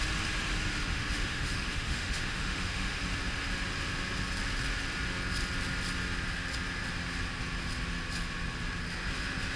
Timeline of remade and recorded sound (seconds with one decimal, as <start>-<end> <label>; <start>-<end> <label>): 0.0-0.9 recorded; 0.9-3.0 remade; 3.0-9.6 recorded